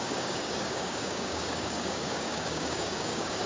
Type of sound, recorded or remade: remade